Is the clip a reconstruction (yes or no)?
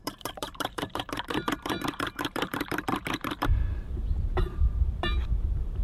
yes